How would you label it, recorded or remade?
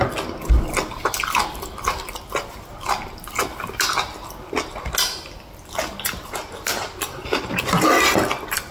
recorded